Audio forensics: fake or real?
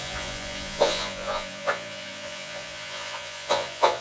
fake